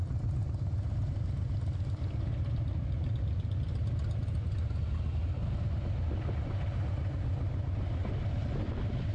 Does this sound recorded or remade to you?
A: recorded